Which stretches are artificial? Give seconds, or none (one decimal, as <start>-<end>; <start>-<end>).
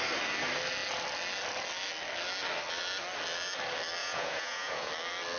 4.0-4.9